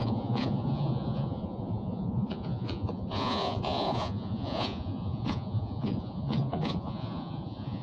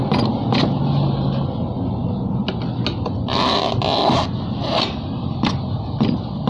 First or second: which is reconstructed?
first